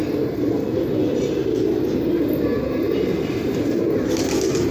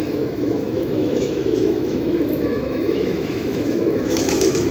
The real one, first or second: first